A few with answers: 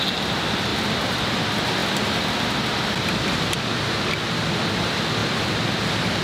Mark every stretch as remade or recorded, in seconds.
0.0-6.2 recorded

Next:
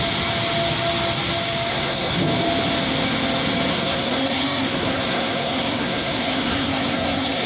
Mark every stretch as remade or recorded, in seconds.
0.0-1.7 recorded; 1.7-2.2 remade; 2.2-3.7 recorded; 3.7-7.5 remade

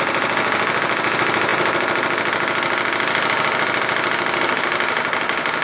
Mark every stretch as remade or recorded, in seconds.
0.0-5.6 recorded

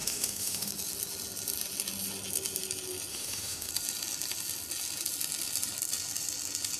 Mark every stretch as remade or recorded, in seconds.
0.0-0.7 remade; 0.7-3.1 recorded; 3.1-3.7 remade; 3.7-6.8 recorded

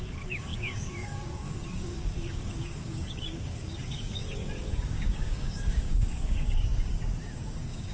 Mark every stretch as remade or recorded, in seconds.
0.0-7.9 remade

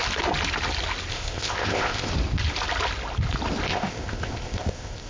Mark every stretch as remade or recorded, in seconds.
0.0-1.1 recorded; 1.1-2.1 remade; 2.1-3.7 recorded; 3.7-5.1 remade

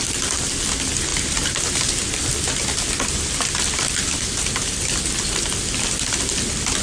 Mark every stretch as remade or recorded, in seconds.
0.0-6.8 recorded